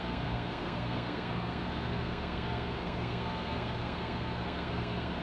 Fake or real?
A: fake